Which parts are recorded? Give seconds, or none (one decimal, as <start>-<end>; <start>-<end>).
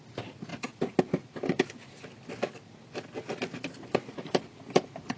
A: 0.0-5.2